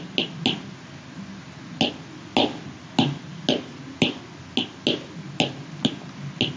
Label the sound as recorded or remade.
recorded